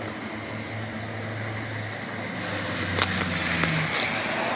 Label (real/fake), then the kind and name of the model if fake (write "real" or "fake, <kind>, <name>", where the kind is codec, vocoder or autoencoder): real